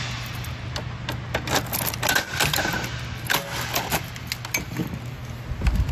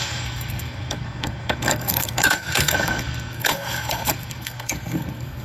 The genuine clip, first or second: first